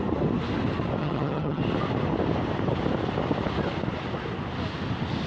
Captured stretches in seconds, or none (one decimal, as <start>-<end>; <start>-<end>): 0.0-1.0; 1.6-5.3